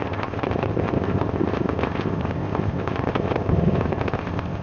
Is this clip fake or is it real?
fake